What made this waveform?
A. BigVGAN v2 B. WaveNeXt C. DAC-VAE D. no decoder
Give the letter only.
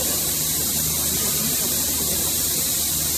D